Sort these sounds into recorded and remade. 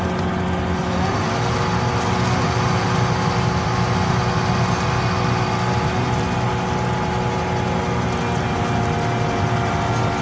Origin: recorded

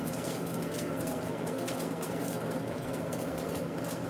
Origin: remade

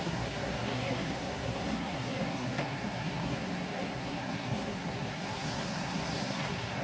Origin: remade